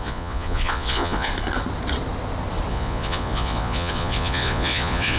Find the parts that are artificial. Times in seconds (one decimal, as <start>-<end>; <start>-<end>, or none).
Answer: 0.0-1.3; 2.7-5.2